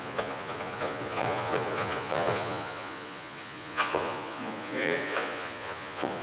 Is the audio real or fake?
fake